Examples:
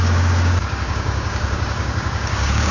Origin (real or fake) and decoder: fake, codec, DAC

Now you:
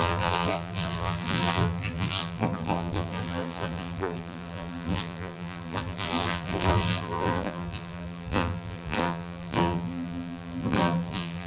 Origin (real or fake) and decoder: fake, vocoder, BigVGAN v2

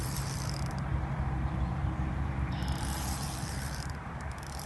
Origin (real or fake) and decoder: fake, vocoder, BigVGAN v2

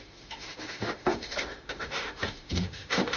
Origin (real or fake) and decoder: fake, autoencoder, DAC-VAE